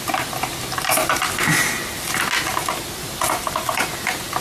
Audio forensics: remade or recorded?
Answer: recorded